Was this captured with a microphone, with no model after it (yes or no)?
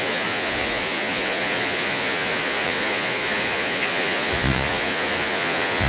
no